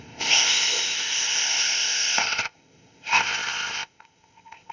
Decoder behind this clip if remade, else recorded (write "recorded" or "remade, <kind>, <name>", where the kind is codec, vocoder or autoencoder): remade, codec, ZipCodec